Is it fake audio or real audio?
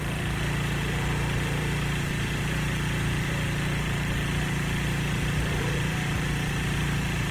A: fake